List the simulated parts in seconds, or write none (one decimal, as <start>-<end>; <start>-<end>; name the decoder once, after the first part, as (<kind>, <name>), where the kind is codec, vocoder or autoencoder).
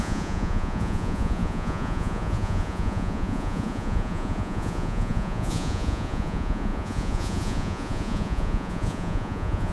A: 0.0-9.7 (vocoder, Vocos)